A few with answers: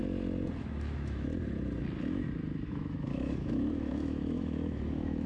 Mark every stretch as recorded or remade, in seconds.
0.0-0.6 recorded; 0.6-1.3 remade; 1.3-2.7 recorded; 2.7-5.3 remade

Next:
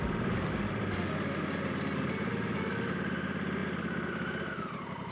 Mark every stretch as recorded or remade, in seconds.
0.0-2.3 recorded; 2.3-3.0 remade; 3.0-5.1 recorded

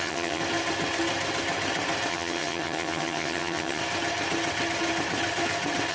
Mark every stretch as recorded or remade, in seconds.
0.0-0.4 remade; 0.4-2.1 recorded; 2.1-3.8 remade; 3.8-5.9 recorded

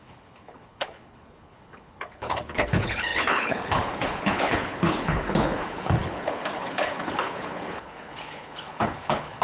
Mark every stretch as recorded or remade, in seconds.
0.0-9.4 remade

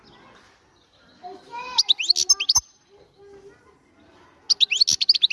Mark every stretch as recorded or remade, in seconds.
0.0-5.3 recorded